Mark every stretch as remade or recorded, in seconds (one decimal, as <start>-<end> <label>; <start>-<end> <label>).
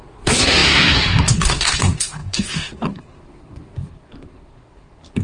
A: 0.0-5.2 remade